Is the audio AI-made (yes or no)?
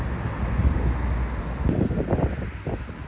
no